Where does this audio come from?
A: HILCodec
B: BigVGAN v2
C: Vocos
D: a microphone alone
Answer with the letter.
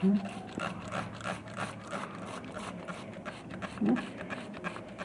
B